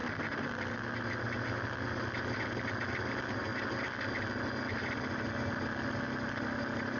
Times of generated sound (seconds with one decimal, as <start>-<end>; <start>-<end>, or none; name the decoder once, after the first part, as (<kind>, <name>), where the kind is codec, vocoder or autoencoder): none

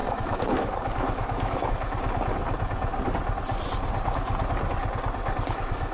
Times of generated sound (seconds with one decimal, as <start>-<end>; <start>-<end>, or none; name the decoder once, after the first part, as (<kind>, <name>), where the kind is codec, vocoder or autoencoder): 0.0-1.7 (codec, DAC)

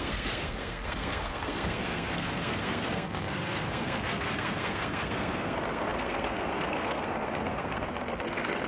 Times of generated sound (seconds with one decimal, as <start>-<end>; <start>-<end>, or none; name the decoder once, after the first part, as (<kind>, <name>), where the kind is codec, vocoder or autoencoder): 0.0-8.7 (codec, SNAC)